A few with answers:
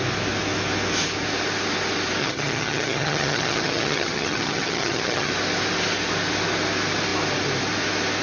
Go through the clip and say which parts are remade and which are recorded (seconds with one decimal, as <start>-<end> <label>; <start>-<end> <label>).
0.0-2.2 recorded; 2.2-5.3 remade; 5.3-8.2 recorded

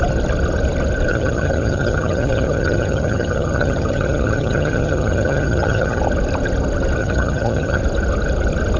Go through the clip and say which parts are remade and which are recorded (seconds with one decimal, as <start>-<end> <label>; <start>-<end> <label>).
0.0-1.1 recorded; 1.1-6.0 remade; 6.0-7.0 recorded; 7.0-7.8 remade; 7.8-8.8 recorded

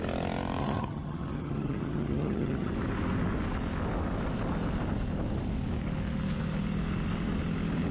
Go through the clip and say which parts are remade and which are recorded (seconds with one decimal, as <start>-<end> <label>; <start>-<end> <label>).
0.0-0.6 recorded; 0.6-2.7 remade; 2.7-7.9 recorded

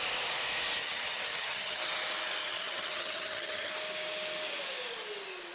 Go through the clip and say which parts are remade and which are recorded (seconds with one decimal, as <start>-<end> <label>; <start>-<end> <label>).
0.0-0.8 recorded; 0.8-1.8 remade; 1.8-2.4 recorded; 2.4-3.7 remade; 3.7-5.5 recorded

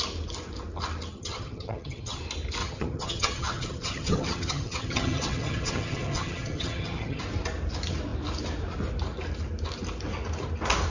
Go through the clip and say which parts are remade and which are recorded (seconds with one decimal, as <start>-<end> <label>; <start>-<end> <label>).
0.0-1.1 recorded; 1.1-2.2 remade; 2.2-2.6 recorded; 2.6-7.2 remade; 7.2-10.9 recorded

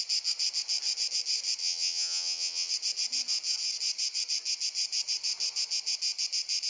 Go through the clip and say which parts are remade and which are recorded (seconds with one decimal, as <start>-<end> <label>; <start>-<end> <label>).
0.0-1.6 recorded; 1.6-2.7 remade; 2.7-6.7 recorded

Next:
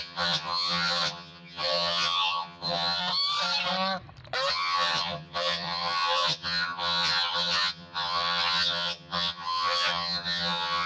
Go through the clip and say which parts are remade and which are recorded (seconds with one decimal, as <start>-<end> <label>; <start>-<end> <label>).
0.0-3.0 remade; 3.0-4.5 recorded; 4.5-10.9 remade

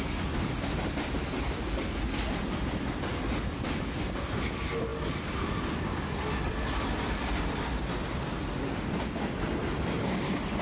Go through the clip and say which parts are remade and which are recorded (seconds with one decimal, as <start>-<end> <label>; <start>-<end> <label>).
0.0-10.6 recorded